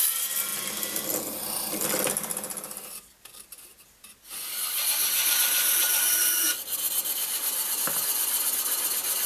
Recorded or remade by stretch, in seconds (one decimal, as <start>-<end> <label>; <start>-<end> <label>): 0.0-9.3 recorded